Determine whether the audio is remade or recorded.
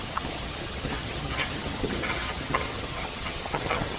remade